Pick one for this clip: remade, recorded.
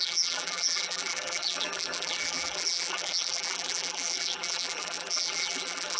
remade